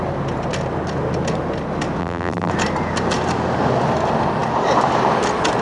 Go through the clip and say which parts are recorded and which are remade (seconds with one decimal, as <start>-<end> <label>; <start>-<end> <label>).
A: 0.0-2.0 recorded; 2.0-2.5 remade; 2.5-5.6 recorded